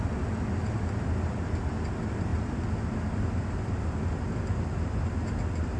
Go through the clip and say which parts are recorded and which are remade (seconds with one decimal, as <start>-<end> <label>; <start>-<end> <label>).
0.0-5.8 recorded